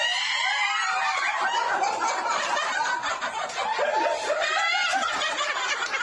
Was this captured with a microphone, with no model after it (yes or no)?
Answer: no